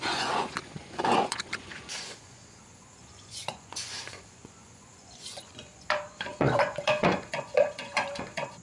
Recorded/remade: remade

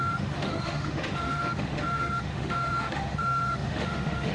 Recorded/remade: remade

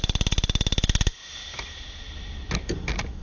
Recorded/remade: recorded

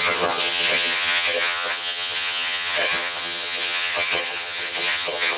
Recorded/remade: remade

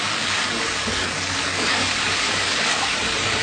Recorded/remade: remade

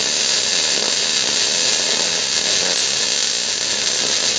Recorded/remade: recorded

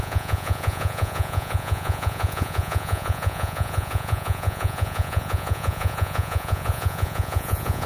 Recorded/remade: remade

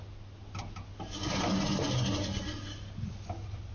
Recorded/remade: recorded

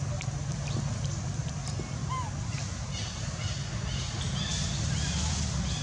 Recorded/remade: recorded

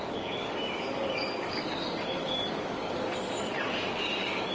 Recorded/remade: remade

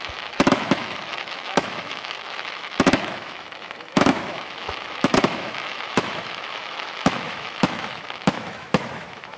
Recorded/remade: remade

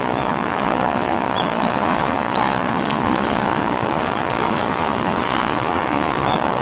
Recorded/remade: remade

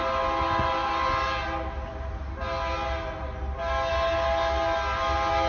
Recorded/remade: recorded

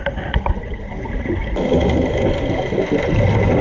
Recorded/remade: recorded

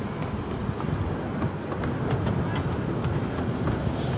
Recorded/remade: recorded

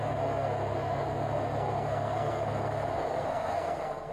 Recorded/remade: remade